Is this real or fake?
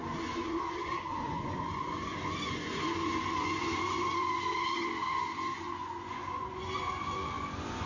fake